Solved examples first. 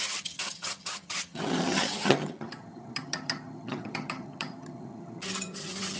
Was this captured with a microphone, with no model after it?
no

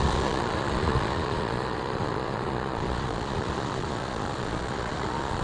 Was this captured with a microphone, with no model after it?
no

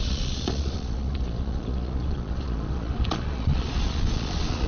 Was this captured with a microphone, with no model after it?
no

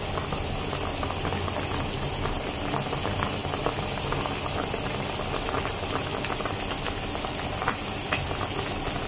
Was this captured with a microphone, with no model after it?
yes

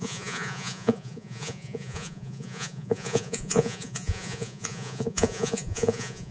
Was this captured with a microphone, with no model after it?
no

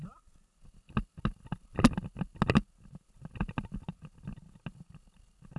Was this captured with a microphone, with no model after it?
yes